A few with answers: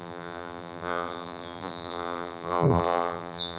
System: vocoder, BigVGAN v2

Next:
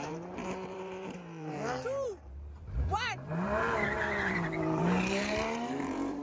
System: vocoder, BigVGAN v2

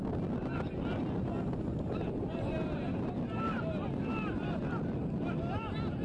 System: none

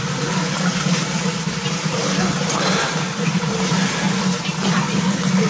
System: none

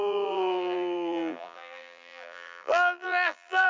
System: vocoder, BigVGAN v2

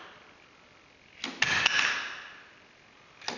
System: none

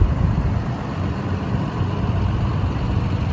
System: none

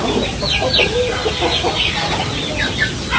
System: none